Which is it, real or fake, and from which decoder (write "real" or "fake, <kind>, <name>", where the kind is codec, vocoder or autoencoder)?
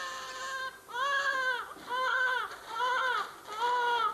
real